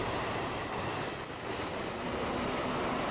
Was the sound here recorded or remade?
recorded